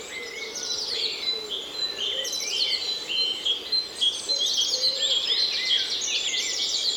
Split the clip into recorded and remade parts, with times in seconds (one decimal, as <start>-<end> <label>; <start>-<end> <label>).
0.0-0.4 recorded; 0.4-3.5 remade; 3.5-7.0 recorded